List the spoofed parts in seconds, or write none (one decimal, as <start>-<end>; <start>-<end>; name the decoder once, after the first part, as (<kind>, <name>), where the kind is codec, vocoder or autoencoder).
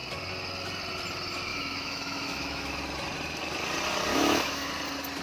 1.5-2.8 (autoencoder, DAC-VAE); 4.1-4.7